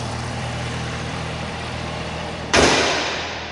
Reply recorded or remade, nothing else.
remade